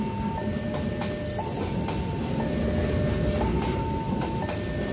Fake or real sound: real